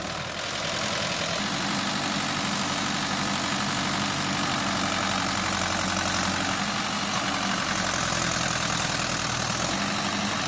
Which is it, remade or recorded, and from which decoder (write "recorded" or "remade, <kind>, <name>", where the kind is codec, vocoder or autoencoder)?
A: recorded